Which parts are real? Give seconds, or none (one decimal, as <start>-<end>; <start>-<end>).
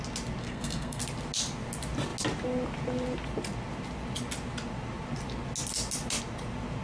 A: 0.0-0.4; 1.0-6.8